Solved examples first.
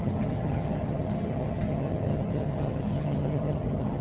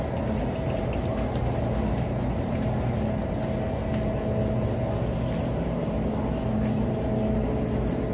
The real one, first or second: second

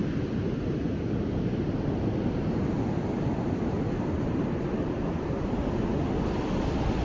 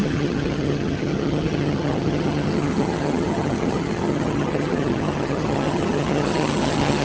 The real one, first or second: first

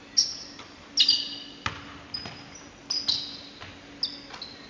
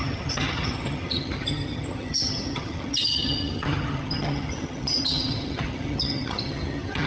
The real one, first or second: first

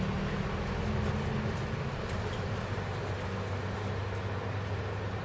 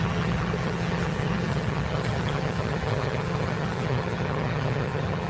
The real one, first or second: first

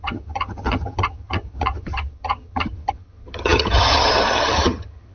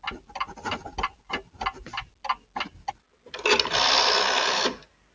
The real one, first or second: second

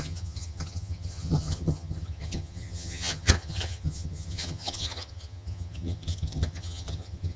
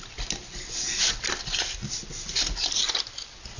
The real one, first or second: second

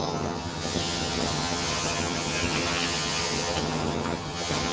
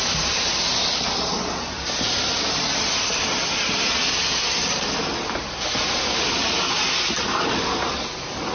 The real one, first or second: second